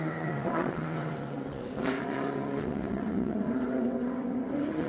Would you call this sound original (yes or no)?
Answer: no